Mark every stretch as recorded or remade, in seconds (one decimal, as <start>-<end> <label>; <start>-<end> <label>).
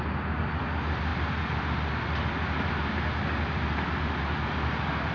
0.0-5.1 recorded